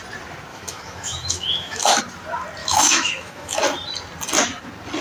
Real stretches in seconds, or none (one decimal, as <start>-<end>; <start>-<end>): 0.0-0.5; 2.0-2.6; 3.6-5.0